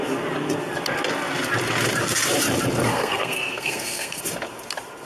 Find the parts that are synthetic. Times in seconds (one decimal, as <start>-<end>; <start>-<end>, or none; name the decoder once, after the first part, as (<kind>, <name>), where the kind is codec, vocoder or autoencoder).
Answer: 2.9-4.2 (codec, SNAC)